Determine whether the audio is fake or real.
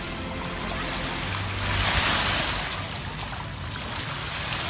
real